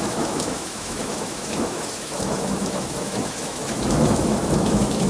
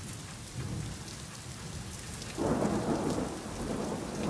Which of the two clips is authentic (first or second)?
second